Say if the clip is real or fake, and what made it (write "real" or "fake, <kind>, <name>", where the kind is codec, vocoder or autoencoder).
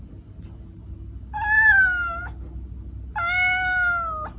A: real